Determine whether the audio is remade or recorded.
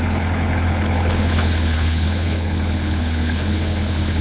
remade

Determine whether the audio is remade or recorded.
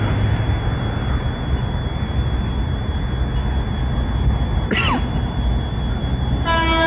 recorded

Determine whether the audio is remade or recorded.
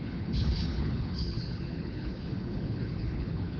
remade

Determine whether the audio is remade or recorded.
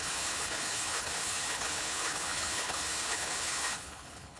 remade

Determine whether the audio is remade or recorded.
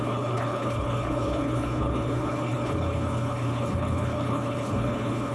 remade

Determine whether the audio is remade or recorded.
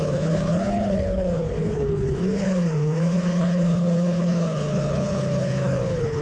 remade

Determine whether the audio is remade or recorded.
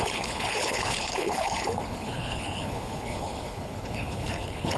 remade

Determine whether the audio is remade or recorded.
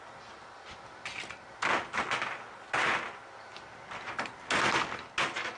recorded